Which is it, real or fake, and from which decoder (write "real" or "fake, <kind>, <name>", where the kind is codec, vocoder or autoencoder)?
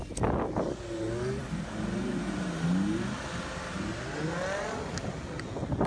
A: real